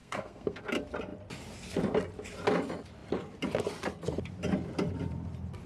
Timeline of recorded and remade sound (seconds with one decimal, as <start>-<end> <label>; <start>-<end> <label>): 0.0-0.6 remade; 0.6-5.7 recorded

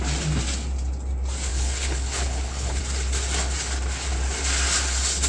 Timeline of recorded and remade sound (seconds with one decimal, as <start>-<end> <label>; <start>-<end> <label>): 0.0-1.5 recorded; 1.5-2.8 remade; 2.8-5.3 recorded